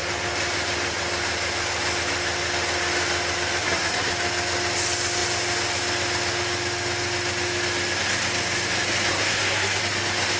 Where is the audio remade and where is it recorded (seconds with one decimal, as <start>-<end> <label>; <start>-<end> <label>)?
0.0-3.6 recorded; 3.6-4.1 remade; 4.1-9.1 recorded; 9.1-9.8 remade; 9.8-10.4 recorded